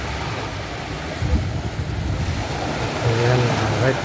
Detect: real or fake real